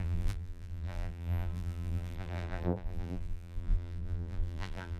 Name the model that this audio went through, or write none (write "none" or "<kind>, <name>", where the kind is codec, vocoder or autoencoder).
vocoder, BigVGAN v2